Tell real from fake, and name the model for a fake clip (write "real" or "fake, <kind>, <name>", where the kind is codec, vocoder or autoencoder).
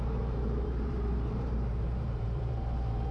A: fake, vocoder, BigVGAN v2